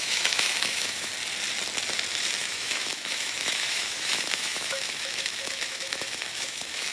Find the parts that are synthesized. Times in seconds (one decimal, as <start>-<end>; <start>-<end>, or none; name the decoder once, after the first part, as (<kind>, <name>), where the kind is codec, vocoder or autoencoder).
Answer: 0.0-1.1 (autoencoder, DAC-VAE); 2.4-6.9